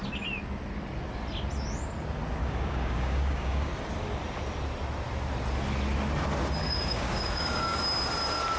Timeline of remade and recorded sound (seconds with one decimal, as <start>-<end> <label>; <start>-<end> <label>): 0.0-2.4 recorded; 2.4-3.7 remade; 3.7-6.6 recorded; 6.6-7.8 remade; 7.8-8.6 recorded